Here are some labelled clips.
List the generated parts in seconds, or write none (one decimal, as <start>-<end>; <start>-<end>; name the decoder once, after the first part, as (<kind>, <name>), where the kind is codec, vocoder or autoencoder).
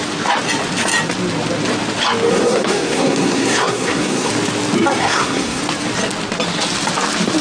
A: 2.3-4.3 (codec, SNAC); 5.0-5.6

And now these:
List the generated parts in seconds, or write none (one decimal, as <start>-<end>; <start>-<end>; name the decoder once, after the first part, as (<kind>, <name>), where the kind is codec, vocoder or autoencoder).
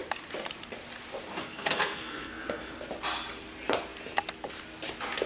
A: 1.4-2.7 (codec, SNAC)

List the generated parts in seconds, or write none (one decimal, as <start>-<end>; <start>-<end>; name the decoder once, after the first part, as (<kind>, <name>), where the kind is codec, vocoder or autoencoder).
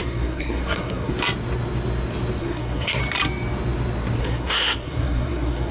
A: 0.0-1.1 (codec, SNAC); 2.4-3.0; 4.2-5.7